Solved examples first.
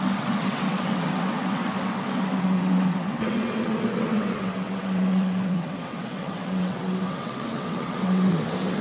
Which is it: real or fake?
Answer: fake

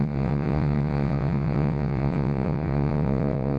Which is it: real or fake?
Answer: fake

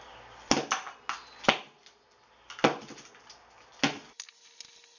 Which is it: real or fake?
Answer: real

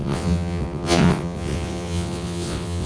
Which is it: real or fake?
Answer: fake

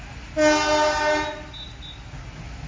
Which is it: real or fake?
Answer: real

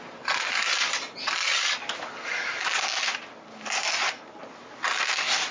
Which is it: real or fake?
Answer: real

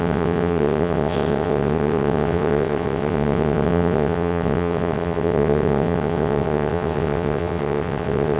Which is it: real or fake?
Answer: fake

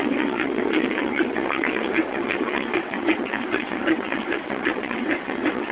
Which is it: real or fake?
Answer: fake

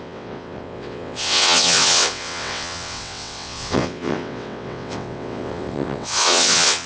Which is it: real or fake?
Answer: fake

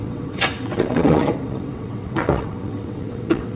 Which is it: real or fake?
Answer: fake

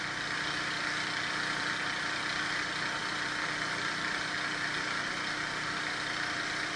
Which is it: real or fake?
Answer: real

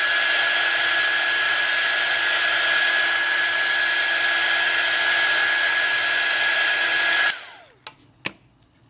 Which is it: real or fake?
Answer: real